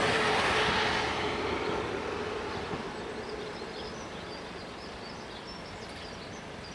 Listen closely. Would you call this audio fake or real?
real